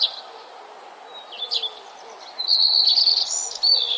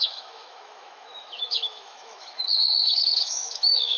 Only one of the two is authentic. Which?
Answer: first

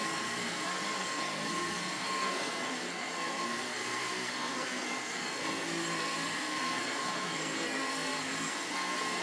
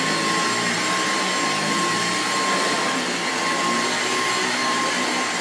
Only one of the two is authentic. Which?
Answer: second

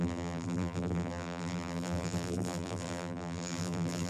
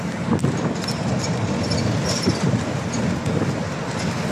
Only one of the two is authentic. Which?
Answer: second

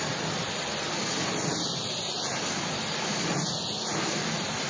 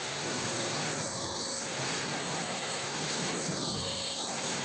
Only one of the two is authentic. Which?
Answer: first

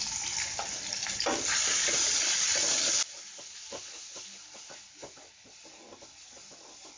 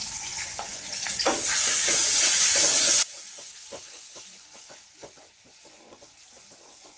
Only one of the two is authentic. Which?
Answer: first